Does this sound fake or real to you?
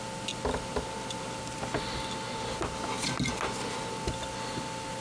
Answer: real